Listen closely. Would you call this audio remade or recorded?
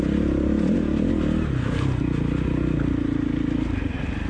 recorded